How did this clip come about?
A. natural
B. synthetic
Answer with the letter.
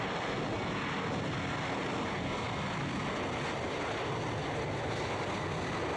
A